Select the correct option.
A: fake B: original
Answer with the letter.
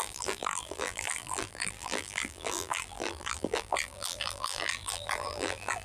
A